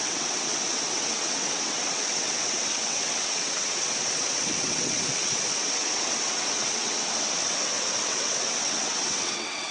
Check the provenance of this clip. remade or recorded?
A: remade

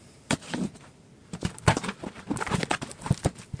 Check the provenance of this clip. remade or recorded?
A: recorded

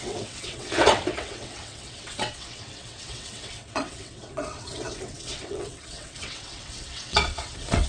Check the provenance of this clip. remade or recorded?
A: remade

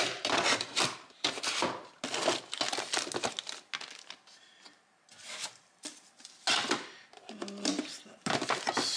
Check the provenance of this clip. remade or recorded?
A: recorded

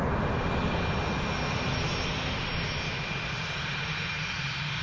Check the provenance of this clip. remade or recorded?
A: recorded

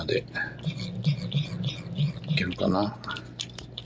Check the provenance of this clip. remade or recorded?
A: recorded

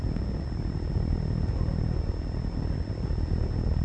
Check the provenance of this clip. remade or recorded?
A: recorded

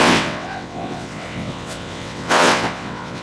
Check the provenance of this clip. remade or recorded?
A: remade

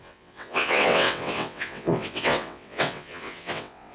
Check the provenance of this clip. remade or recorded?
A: remade